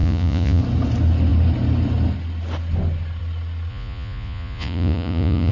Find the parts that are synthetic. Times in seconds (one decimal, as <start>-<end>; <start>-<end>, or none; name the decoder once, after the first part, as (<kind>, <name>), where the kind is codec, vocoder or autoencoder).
0.0-0.6 (vocoder, Vocos); 3.7-5.5